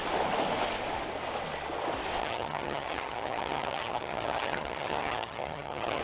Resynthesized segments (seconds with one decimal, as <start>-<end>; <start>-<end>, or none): 2.2-6.0